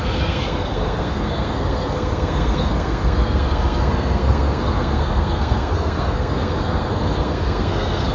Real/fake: fake